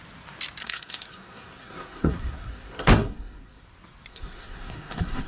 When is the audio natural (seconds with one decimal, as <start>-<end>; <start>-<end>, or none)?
0.0-0.6; 3.6-4.1